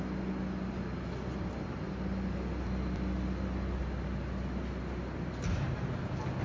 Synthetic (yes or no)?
no